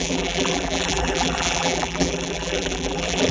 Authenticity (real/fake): fake